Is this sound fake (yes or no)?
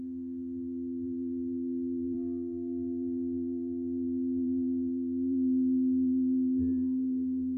yes